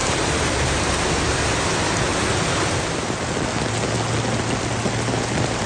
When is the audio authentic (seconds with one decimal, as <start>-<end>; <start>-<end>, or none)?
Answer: 0.7-5.7